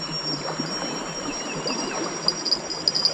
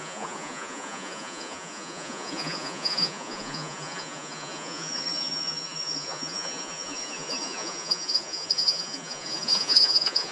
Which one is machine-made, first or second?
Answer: second